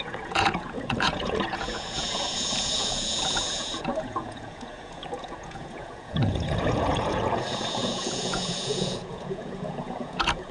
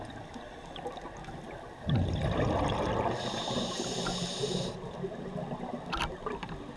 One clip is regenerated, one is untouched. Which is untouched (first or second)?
second